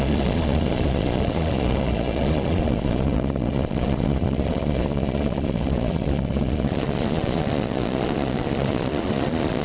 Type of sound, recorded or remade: remade